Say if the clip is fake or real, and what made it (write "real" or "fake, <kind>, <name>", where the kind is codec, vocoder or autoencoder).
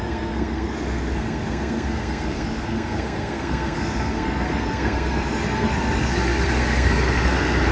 fake, codec, SNAC